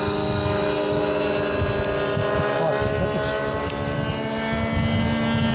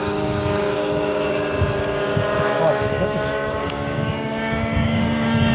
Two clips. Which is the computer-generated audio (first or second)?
second